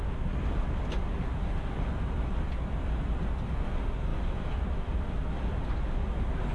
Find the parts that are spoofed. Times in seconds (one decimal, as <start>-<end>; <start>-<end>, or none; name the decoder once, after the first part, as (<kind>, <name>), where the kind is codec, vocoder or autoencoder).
none